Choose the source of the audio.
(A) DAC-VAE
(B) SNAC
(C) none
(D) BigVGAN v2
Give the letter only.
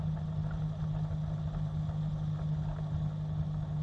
C